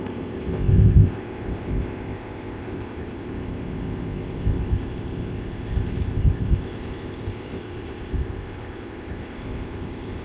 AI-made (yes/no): yes